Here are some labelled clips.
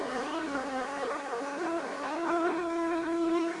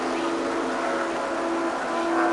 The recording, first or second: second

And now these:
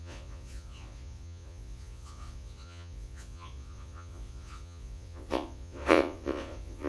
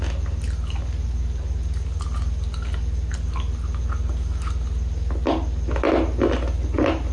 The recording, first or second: second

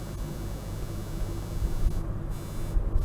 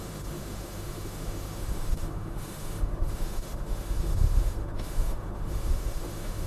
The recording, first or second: first